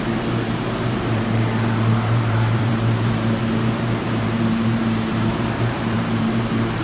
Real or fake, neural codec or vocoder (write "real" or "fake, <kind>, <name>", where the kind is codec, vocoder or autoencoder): fake, vocoder, BigVGAN v2